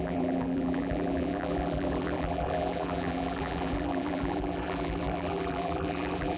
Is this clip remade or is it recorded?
remade